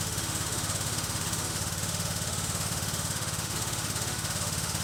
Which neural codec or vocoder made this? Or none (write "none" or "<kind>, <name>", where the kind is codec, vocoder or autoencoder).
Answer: autoencoder, DAC-VAE